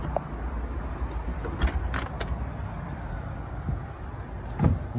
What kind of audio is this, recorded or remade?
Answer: recorded